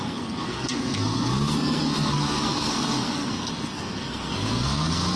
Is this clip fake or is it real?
fake